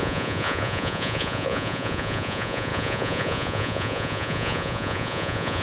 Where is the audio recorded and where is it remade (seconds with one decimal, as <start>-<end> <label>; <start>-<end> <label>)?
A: 0.0-5.6 remade